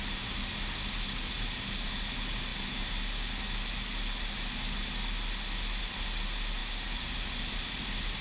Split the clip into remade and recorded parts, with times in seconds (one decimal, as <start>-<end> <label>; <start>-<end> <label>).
0.0-8.2 recorded